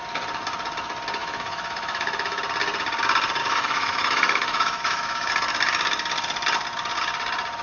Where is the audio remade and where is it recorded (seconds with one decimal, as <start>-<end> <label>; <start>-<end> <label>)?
0.0-1.2 recorded; 1.2-2.4 remade; 2.4-3.4 recorded; 3.4-5.3 remade; 5.3-7.6 recorded